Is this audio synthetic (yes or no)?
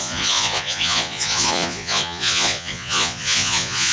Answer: yes